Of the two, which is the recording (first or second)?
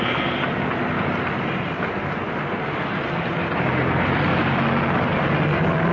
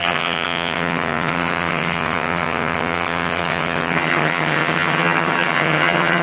first